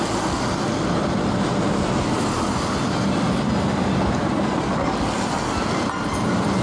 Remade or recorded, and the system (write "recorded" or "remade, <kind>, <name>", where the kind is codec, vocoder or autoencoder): recorded